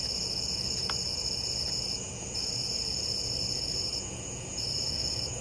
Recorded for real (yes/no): no